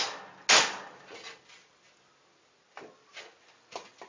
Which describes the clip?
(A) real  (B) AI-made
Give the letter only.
A